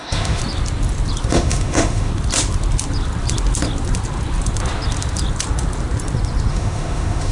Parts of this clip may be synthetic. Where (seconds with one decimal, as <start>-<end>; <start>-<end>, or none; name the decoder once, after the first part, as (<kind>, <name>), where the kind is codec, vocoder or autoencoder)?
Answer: 0.0-0.4 (autoencoder, DAC-VAE); 1.3-2.1; 6.5-7.3